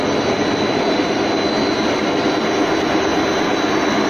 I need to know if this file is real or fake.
real